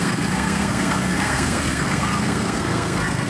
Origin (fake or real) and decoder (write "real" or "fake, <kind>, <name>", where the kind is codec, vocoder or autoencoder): fake, codec, SNAC